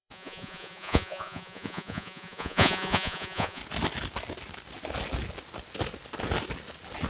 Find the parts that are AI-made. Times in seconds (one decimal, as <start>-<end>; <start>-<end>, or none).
0.0-3.6